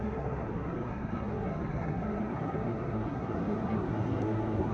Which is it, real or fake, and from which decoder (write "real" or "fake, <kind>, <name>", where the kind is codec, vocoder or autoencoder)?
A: fake, codec, SNAC